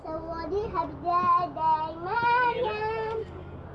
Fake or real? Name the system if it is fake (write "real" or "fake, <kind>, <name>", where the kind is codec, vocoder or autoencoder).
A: real